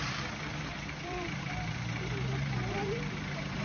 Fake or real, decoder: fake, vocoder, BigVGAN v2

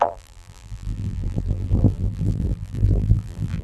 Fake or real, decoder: fake, vocoder, BigVGAN v2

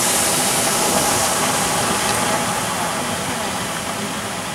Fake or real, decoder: real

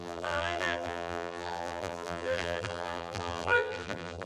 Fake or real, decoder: fake, vocoder, BigVGAN v2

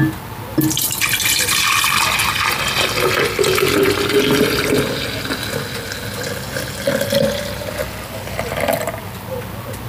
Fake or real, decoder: real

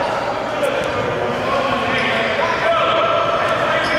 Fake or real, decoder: fake, vocoder, BigVGAN v2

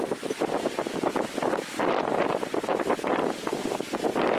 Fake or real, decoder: real